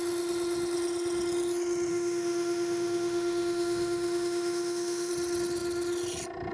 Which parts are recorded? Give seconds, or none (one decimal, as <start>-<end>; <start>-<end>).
0.0-1.9; 5.1-6.5